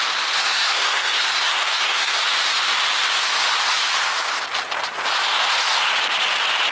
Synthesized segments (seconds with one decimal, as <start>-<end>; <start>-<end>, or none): 0.4-2.2